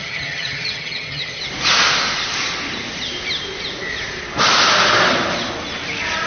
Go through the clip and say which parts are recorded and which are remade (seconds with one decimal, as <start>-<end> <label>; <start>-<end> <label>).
0.0-1.4 remade; 1.4-6.3 recorded